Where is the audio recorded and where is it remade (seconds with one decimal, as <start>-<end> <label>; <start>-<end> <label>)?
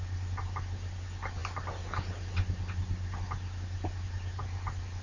0.0-5.0 recorded